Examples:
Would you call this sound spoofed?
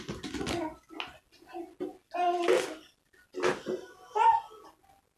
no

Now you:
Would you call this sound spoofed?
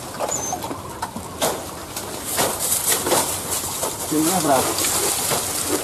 no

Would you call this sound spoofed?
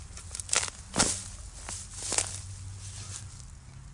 no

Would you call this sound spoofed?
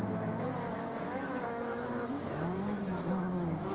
yes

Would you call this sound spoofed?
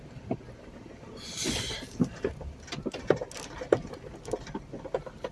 no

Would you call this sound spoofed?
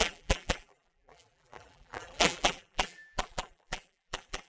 yes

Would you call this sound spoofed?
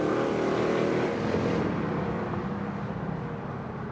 no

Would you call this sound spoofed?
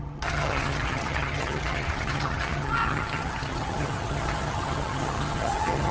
yes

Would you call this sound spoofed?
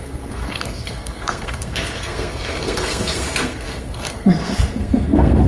yes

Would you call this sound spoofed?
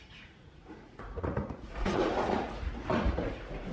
yes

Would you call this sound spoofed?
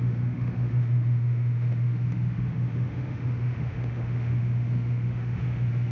yes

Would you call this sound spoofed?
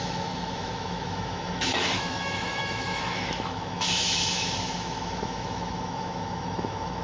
yes